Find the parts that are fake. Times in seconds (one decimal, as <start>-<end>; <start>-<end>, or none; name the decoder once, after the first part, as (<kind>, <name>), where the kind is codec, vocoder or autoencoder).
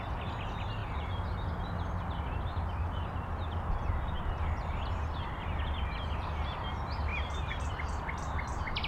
7.1-7.7 (vocoder, BigVGAN v2)